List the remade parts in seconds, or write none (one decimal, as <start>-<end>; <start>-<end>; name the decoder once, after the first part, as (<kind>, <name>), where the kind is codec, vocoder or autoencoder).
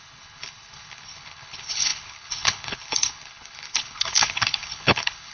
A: 0.0-5.3 (codec, HILCodec)